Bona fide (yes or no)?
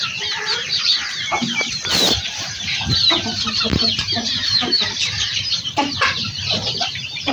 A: no